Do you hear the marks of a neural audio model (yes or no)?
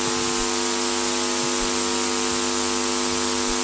no